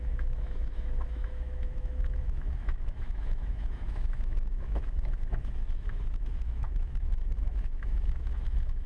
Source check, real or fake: fake